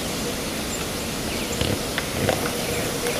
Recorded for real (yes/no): yes